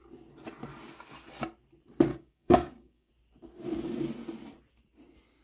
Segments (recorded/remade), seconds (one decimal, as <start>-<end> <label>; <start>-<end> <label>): 0.0-2.1 recorded; 2.1-3.1 remade; 3.1-5.4 recorded